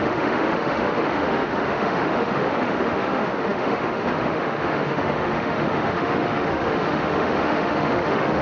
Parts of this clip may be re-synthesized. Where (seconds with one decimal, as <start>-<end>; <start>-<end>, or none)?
0.0-8.4